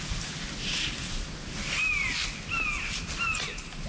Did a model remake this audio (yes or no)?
no